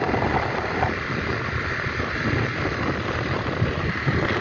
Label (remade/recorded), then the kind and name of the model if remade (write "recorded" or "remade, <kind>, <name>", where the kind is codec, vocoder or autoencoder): recorded